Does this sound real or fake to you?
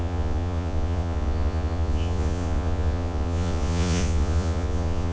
fake